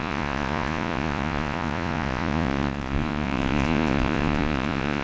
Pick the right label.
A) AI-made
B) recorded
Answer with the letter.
A